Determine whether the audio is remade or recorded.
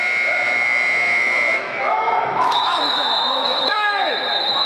remade